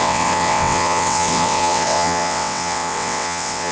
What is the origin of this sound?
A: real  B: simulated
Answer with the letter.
B